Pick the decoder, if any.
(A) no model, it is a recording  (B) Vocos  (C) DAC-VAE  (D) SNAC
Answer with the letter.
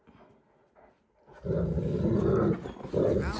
A